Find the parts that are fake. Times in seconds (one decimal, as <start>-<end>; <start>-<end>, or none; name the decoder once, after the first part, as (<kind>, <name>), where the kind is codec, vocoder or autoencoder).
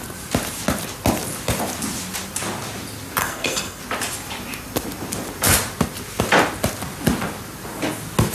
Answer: 3.2-3.8 (codec, SNAC)